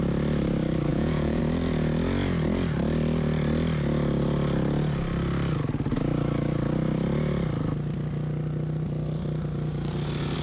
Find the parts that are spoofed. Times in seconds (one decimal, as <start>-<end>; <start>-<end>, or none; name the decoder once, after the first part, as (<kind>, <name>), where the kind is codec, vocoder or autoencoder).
0.9-1.4 (vocoder, Vocos)